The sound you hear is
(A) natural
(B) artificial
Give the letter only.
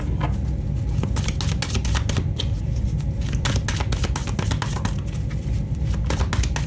A